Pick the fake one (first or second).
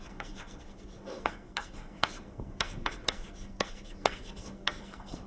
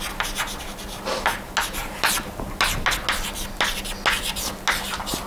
first